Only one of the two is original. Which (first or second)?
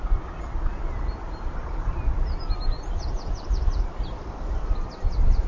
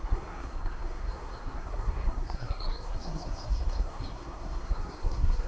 first